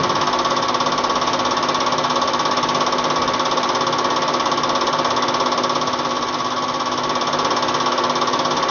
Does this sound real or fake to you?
real